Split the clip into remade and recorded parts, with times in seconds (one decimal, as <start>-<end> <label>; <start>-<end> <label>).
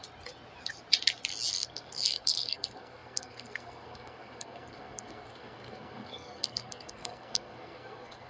0.0-1.5 recorded; 1.5-8.3 remade